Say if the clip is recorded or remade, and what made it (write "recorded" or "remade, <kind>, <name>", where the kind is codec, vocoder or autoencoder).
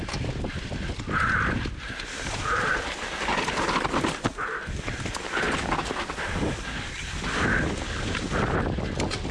recorded